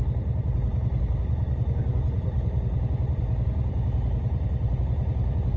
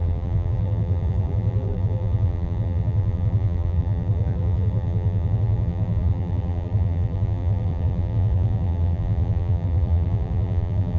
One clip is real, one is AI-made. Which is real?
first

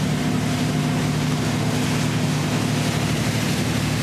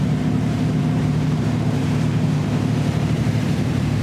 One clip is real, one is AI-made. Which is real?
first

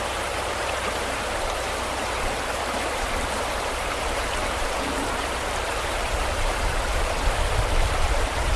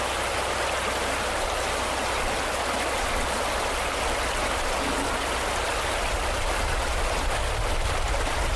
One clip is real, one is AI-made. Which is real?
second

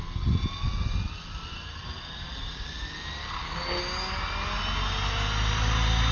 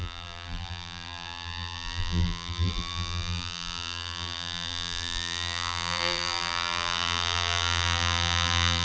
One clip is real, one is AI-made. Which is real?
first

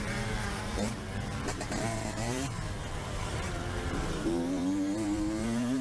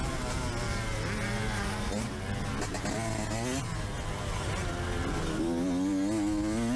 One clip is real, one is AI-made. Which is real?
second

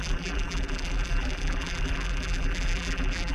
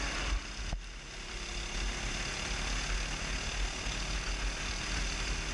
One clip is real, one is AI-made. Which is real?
second